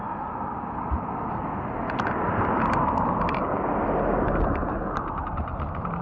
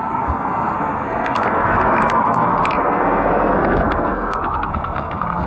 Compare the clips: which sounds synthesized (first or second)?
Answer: second